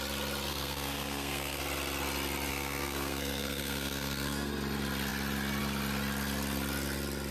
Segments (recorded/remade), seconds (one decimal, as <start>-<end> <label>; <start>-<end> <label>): 0.0-0.5 recorded; 0.5-1.6 remade; 1.6-2.5 recorded; 2.5-4.5 remade; 4.5-7.3 recorded